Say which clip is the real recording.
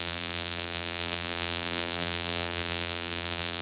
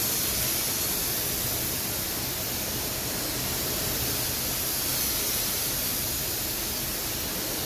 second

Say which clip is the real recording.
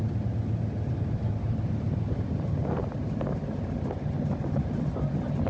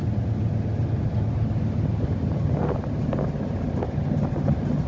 second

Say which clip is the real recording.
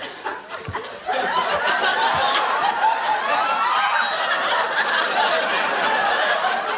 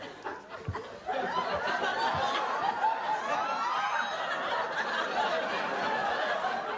second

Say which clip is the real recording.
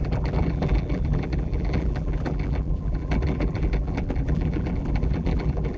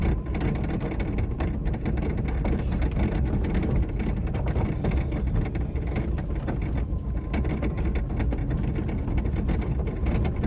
second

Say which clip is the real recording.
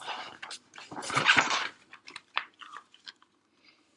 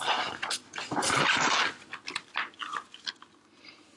second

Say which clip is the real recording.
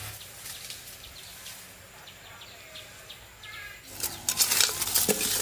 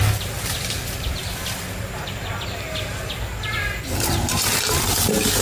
first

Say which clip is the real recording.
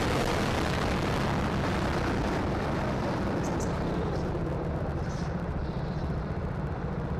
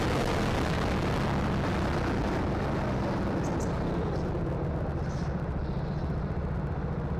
second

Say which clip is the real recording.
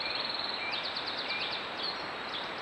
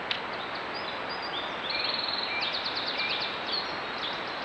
second